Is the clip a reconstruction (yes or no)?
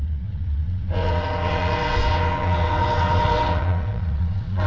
yes